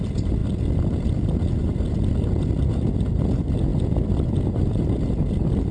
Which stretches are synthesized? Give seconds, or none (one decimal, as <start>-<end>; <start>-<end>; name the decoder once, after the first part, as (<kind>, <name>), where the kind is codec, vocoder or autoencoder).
0.0-5.7 (vocoder, BigVGAN v2)